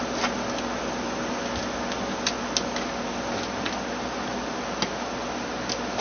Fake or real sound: real